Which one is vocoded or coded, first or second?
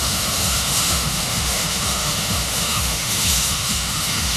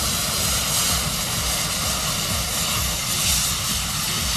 first